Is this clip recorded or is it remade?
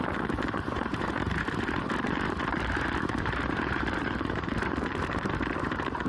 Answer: remade